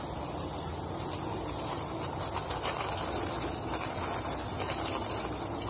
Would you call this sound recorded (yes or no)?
yes